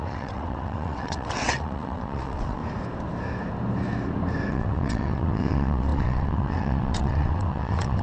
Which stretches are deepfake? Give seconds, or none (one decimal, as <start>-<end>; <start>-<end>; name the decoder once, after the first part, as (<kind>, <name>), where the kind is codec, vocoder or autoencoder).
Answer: 0.0-2.6 (vocoder, WaveNeXt); 4.5-8.0